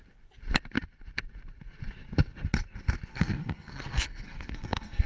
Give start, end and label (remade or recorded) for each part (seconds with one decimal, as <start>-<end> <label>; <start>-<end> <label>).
0.0-3.1 recorded; 3.1-5.1 remade